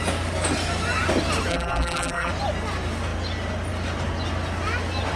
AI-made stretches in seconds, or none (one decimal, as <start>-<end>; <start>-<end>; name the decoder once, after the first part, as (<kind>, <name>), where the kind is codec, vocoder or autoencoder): 1.5-2.3 (vocoder, BigVGAN v2)